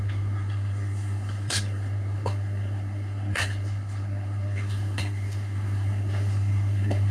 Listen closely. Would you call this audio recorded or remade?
remade